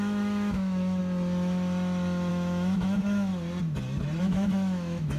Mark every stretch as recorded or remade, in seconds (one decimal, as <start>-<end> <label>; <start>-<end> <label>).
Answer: 0.0-1.0 remade; 1.0-2.3 recorded; 2.3-3.3 remade; 3.3-4.2 recorded; 4.2-5.2 remade